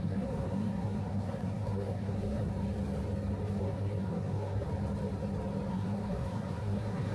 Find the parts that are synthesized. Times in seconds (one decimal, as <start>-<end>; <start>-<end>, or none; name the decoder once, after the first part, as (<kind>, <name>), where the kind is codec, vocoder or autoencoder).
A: 0.0-2.5 (codec, SNAC); 3.6-4.7; 5.7-7.1